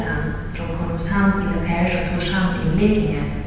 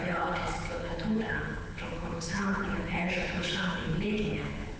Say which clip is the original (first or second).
first